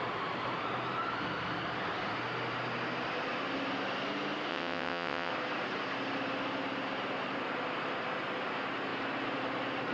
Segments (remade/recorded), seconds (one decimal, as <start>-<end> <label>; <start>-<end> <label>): 0.0-4.5 recorded; 4.5-5.3 remade; 5.3-9.9 recorded

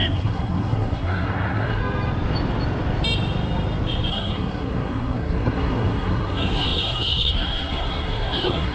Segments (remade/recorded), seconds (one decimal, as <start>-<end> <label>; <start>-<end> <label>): 0.0-1.8 remade; 1.8-4.1 recorded; 4.1-8.7 remade

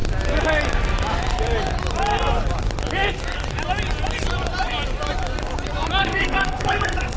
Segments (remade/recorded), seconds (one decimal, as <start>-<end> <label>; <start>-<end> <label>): 0.0-6.0 recorded; 6.0-7.2 remade

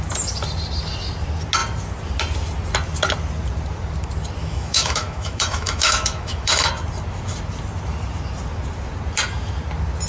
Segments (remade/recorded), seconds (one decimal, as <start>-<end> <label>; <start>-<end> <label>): 0.0-4.4 recorded; 4.4-6.7 remade; 6.7-10.1 recorded

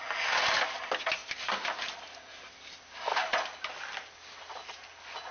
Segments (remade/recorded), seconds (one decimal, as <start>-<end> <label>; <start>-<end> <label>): 0.0-5.3 recorded

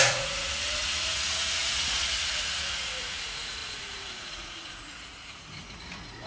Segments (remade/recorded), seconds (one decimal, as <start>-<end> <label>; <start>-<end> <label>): 0.0-6.3 remade

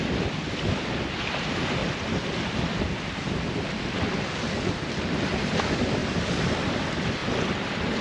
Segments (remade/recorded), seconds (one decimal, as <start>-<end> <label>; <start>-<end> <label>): 0.0-1.8 remade; 1.8-5.4 recorded; 5.4-6.0 remade; 6.0-6.7 recorded; 6.7-7.2 remade; 7.2-8.0 recorded